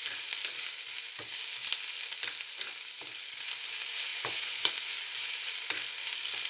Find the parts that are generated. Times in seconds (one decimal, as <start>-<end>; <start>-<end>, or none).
4.1-4.7